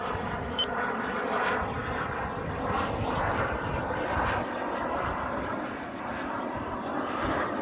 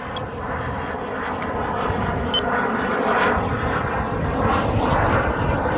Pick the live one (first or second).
second